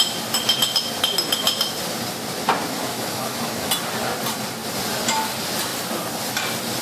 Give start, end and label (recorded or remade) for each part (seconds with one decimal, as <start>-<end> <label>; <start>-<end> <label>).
0.0-2.9 recorded; 2.9-3.7 remade; 3.7-6.8 recorded